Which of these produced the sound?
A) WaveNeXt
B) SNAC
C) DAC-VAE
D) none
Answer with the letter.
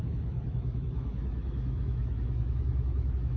C